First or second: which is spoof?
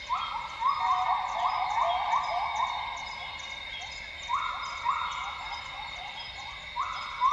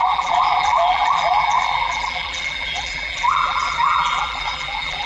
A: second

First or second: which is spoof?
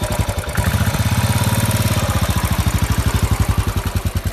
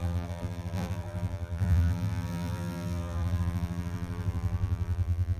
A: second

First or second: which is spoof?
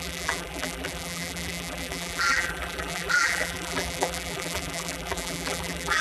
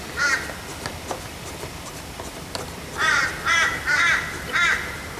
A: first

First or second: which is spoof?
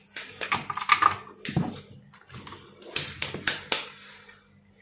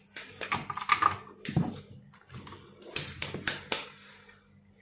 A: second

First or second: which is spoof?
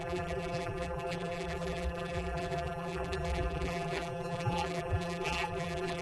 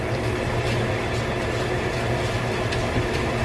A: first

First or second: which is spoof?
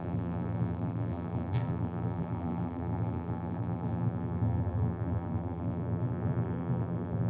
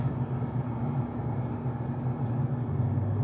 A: first